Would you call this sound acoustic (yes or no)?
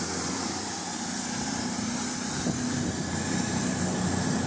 no